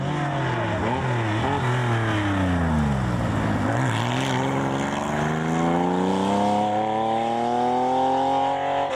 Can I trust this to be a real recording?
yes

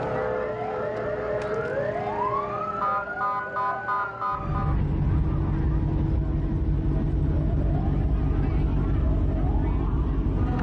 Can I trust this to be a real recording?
yes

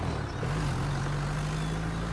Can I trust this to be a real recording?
yes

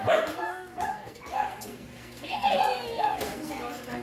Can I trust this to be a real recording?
no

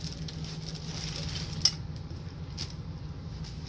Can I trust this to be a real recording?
yes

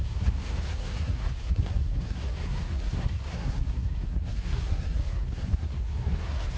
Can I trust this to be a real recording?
no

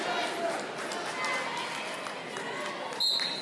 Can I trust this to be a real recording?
yes